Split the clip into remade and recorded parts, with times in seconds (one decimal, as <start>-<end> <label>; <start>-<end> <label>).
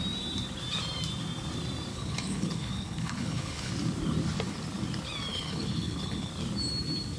0.0-1.9 recorded; 1.9-3.7 remade; 3.7-5.3 recorded; 5.3-6.3 remade; 6.3-7.2 recorded